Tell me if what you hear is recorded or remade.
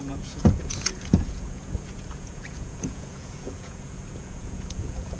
remade